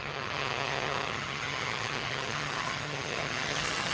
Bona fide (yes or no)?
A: no